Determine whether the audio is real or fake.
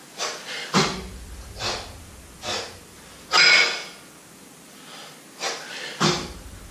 real